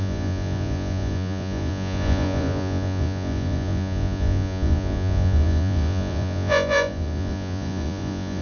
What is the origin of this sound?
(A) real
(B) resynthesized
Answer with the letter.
B